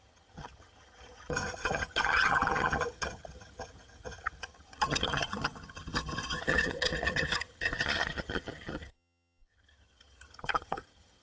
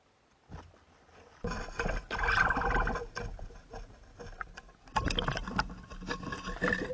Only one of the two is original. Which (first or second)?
second